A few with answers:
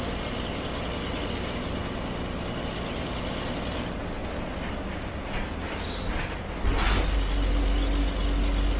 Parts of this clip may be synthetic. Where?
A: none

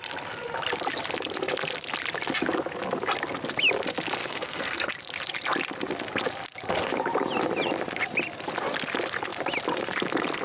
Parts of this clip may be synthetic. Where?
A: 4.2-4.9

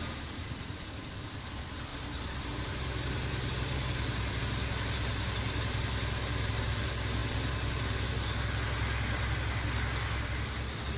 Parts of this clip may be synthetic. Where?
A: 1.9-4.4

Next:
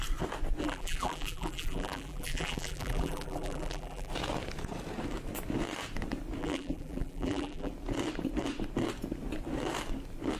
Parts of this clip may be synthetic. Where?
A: 0.6-4.1; 6.4-7.7

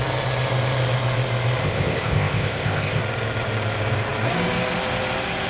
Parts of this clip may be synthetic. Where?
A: 1.6-3.0

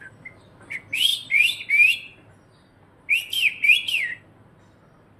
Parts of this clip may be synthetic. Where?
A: none

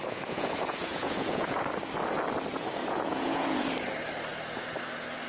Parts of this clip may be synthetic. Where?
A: 0.0-1.6; 2.8-3.7

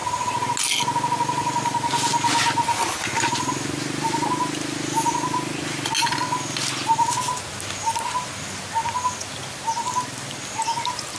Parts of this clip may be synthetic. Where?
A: none